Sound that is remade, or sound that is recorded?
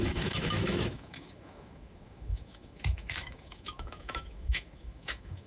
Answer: remade